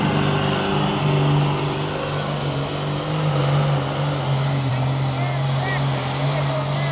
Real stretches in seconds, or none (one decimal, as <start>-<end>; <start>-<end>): 0.0-6.9